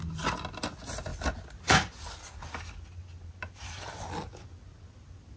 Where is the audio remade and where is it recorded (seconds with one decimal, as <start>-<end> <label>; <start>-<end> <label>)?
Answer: 0.0-5.4 recorded